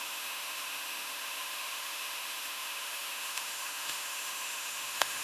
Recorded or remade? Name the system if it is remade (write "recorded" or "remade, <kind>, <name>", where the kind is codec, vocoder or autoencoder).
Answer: remade, autoencoder, DAC-VAE